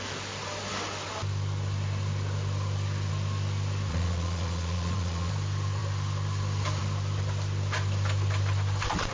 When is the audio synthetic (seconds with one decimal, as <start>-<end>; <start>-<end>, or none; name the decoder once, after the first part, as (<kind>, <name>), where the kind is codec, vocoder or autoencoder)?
3.9-5.3 (vocoder, Vocos)